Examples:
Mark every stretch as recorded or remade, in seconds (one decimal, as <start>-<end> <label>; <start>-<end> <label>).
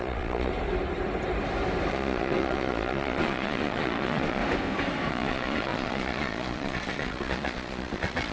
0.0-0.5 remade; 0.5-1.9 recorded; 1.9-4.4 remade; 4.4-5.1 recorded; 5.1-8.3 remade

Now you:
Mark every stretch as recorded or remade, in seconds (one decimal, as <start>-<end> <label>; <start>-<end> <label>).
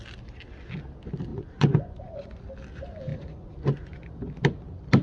0.0-1.3 recorded; 1.3-2.4 remade; 2.4-3.1 recorded; 3.1-4.0 remade; 4.0-5.0 recorded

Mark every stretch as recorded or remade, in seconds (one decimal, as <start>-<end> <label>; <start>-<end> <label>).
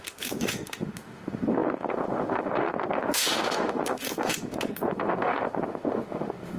0.0-6.6 remade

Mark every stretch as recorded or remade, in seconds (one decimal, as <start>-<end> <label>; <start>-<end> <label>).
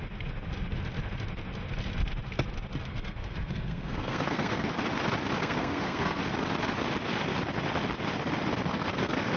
0.0-2.9 recorded; 2.9-4.7 remade; 4.7-5.4 recorded; 5.4-6.2 remade; 6.2-8.7 recorded; 8.7-9.4 remade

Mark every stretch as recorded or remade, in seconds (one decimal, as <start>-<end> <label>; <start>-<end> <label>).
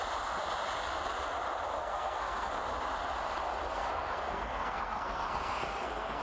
0.0-1.8 recorded; 1.8-2.5 remade; 2.5-3.7 recorded; 3.7-6.2 remade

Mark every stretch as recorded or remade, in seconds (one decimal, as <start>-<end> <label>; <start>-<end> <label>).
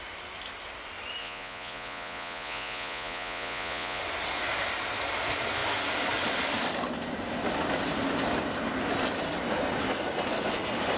0.0-1.2 recorded; 1.2-4.0 remade; 4.0-11.0 recorded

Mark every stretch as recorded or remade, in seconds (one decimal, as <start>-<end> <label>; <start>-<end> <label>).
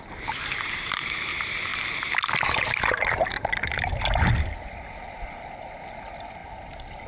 0.0-7.1 recorded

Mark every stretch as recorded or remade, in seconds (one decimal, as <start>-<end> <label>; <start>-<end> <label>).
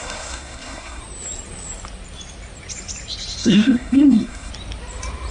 0.0-1.0 remade; 1.0-3.4 recorded; 3.4-4.5 remade; 4.5-5.3 recorded